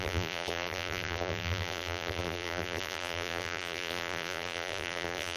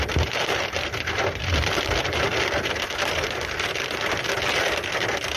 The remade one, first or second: first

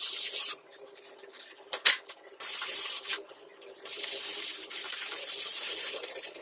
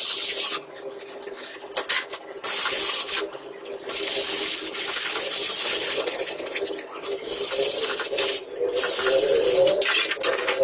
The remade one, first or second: first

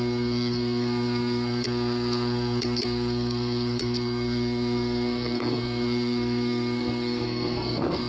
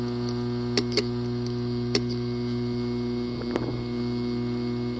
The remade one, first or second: first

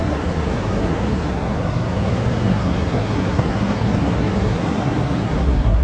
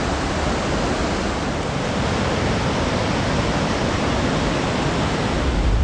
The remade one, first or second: first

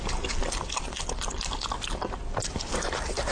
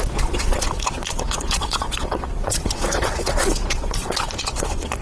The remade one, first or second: second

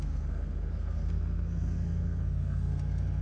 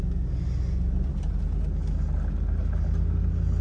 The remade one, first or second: first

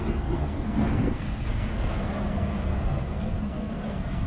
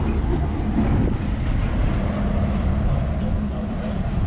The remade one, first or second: first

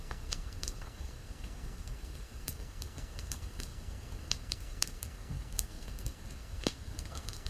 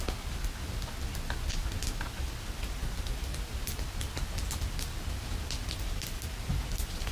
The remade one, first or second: first